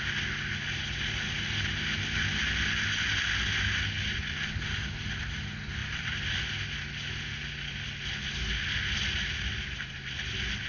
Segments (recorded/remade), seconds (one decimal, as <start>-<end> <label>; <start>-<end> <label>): 0.0-5.8 recorded; 5.8-6.4 remade; 6.4-10.7 recorded